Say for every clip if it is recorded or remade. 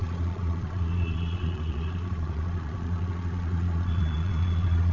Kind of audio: remade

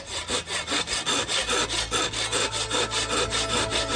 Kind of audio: recorded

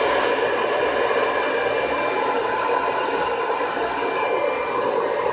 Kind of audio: recorded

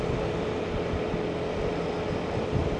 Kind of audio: recorded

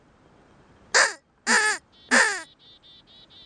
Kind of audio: recorded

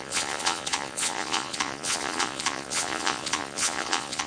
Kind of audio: remade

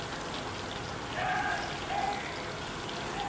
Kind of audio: recorded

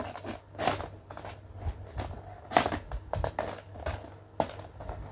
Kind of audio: recorded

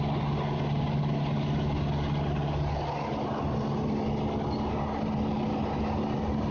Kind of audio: recorded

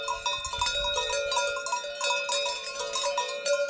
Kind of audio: recorded